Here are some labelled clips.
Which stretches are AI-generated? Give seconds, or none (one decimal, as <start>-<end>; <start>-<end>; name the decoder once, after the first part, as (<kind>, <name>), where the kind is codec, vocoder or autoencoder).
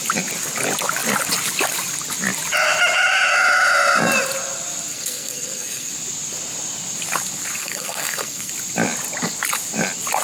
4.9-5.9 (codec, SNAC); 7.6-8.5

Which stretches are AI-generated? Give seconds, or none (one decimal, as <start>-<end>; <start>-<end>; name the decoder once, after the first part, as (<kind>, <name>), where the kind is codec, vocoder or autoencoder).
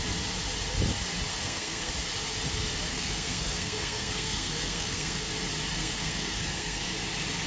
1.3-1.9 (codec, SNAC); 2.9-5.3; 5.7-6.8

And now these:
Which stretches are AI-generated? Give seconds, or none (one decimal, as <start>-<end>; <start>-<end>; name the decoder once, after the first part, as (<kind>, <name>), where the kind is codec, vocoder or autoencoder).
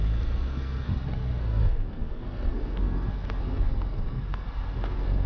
0.0-5.3 (codec, SNAC)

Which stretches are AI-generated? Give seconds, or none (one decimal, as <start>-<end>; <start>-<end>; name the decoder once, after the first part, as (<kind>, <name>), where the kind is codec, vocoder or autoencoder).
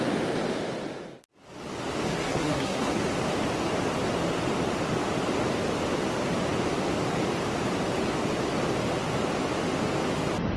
2.1-2.9 (codec, SNAC)